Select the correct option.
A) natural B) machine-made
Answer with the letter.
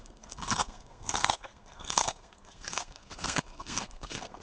B